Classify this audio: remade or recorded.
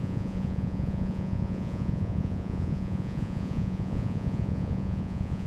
remade